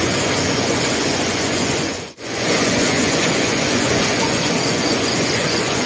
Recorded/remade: remade